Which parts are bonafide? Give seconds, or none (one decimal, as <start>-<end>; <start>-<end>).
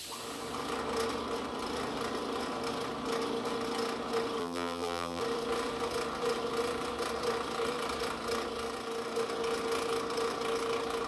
0.0-4.4; 5.2-11.1